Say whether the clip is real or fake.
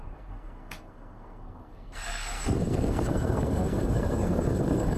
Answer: fake